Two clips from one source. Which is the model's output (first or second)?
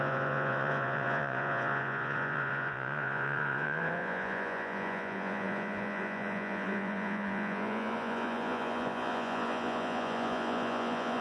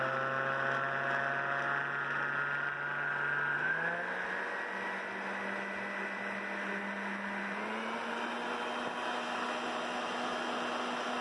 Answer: first